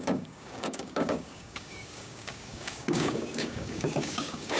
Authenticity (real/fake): fake